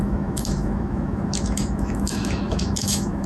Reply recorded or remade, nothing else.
remade